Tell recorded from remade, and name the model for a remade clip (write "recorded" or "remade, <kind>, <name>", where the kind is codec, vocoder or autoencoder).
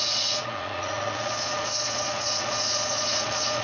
remade, vocoder, Vocos